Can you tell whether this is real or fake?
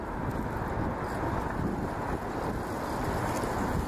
real